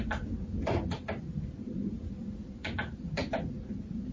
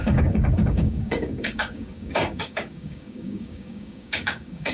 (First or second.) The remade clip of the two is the second